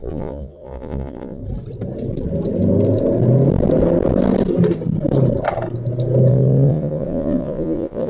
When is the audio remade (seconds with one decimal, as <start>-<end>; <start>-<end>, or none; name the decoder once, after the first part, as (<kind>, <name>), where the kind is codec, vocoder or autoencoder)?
0.0-1.4 (vocoder, Vocos); 6.3-8.1